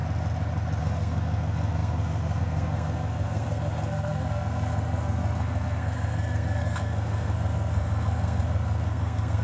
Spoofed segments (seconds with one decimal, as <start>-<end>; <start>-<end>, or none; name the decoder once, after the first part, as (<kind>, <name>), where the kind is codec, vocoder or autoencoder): 0.8-9.4 (codec, SNAC)